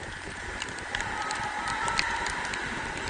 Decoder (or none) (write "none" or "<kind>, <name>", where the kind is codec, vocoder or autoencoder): none